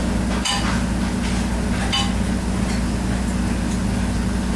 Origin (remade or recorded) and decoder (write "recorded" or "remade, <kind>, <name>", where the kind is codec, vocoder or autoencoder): recorded